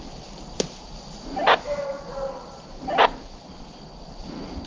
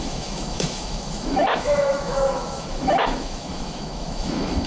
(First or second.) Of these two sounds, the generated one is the second